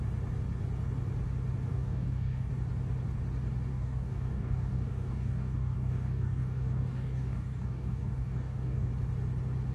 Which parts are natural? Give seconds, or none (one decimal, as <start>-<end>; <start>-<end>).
0.0-1.7; 2.5-3.7; 8.9-9.7